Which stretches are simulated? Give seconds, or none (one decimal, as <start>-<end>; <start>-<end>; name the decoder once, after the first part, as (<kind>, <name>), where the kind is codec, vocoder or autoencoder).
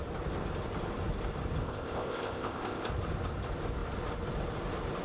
1.6-2.9 (codec, ZipCodec)